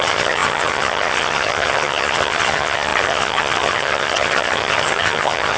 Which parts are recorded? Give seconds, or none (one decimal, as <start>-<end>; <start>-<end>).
none